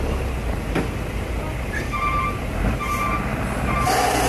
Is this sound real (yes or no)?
yes